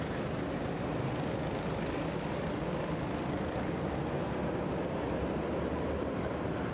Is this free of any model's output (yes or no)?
yes